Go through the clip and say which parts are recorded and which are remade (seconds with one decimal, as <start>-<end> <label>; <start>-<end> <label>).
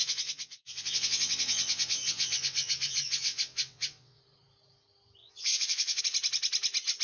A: 0.0-4.2 remade; 4.2-5.2 recorded; 5.2-6.0 remade; 6.0-7.0 recorded